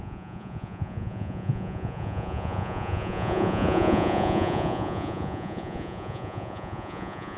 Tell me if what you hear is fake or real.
fake